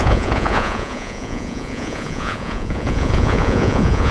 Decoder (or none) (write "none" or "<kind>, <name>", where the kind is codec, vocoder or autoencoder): vocoder, Vocos